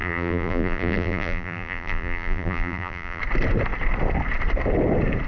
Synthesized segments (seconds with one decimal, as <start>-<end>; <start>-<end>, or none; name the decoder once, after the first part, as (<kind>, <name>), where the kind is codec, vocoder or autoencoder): 0.0-3.2 (vocoder, BigVGAN v2)